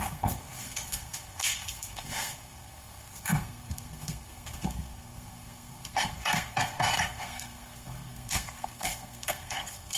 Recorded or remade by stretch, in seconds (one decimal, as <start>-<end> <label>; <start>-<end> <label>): 0.0-10.0 remade